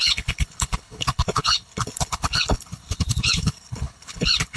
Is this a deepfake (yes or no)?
yes